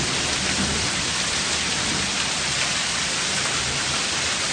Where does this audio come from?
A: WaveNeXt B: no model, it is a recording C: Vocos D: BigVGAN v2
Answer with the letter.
B